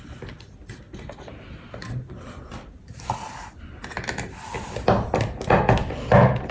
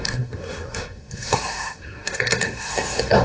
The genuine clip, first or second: first